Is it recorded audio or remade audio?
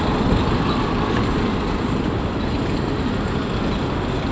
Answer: recorded